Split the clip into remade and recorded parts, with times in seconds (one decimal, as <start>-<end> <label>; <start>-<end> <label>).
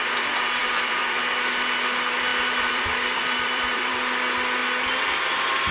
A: 0.0-0.6 recorded; 0.6-1.2 remade; 1.2-2.3 recorded; 2.3-3.9 remade; 3.9-5.7 recorded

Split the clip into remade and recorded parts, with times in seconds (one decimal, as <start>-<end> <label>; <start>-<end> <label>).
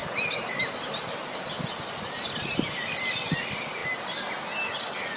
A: 0.0-5.2 recorded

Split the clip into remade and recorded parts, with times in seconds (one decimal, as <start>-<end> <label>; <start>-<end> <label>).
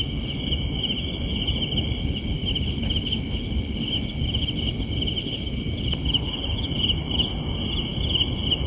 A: 0.0-8.7 recorded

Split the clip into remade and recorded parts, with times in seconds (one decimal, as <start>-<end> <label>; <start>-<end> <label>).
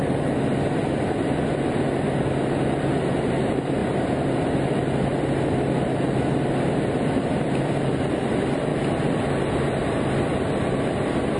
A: 0.0-11.4 recorded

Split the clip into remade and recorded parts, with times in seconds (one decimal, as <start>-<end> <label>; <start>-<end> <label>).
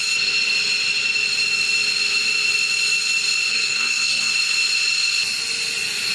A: 0.0-3.5 recorded; 3.5-4.3 remade; 4.3-6.1 recorded